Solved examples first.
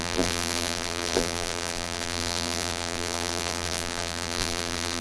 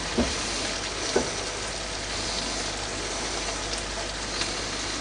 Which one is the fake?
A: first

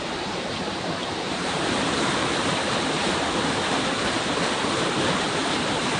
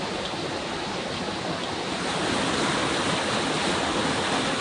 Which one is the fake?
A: first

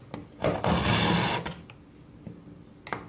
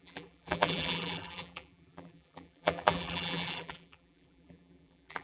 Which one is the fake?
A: second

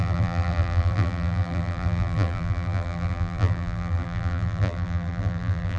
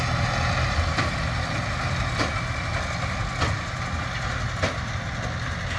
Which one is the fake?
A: first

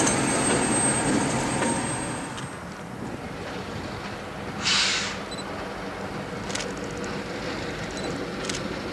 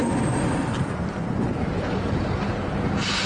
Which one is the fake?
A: second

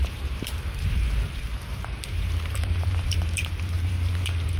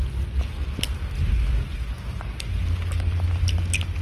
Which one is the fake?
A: first